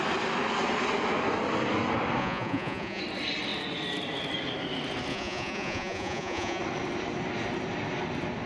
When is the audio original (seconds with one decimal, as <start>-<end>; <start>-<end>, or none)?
0.0-2.2; 3.0-5.1; 6.6-8.5